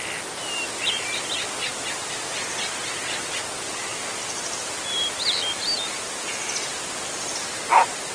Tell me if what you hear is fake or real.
real